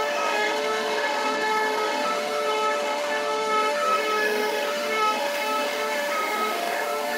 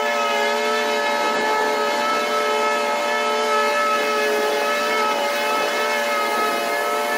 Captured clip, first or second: second